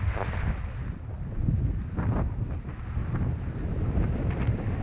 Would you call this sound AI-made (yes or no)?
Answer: no